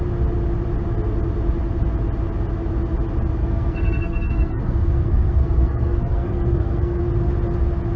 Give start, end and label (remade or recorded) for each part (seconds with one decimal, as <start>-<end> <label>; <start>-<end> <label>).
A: 0.0-3.4 recorded; 3.4-7.0 remade; 7.0-8.0 recorded